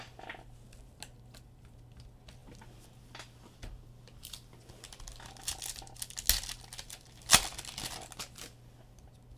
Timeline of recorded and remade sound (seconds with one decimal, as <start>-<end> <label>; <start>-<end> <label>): 0.0-9.4 recorded